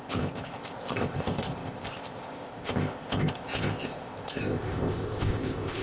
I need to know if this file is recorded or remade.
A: remade